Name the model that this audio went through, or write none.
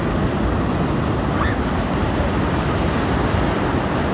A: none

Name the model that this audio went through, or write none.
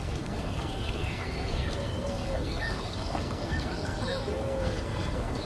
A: codec, SNAC